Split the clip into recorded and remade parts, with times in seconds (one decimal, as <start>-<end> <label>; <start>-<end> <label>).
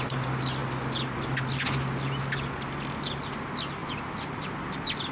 0.0-3.8 recorded; 3.8-5.1 remade